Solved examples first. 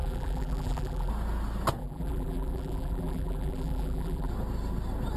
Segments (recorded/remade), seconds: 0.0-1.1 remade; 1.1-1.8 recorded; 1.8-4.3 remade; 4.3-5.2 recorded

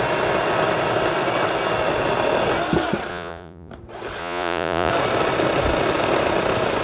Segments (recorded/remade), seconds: 0.0-3.1 recorded; 3.1-3.7 remade; 3.7-4.2 recorded; 4.2-4.9 remade; 4.9-6.8 recorded

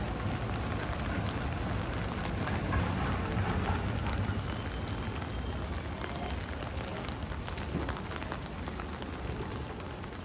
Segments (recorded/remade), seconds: 0.0-10.2 recorded

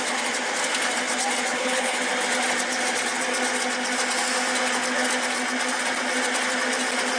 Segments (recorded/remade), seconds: 0.0-1.5 recorded; 1.5-2.0 remade; 2.0-7.2 recorded

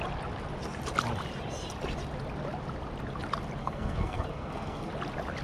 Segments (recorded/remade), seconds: 0.0-3.6 recorded; 3.6-4.9 remade; 4.9-5.4 recorded

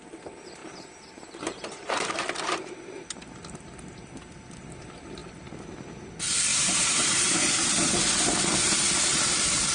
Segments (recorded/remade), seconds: 0.0-0.6 recorded; 0.6-2.1 remade; 2.1-6.5 recorded; 6.5-7.9 remade; 7.9-9.7 recorded

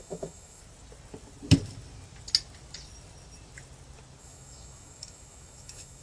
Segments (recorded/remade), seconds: 0.0-0.6 remade; 0.6-4.2 recorded; 4.2-6.0 remade

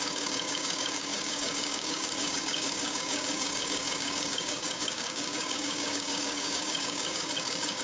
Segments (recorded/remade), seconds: 0.0-7.8 remade